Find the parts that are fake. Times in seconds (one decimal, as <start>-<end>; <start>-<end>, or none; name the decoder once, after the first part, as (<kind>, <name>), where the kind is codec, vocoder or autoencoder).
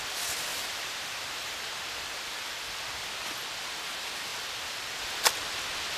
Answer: 0.5-3.1 (vocoder, BigVGAN v2); 4.3-5.6